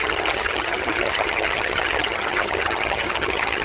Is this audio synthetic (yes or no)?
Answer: yes